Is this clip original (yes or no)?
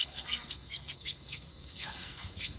no